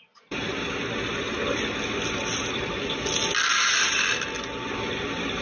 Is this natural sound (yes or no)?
yes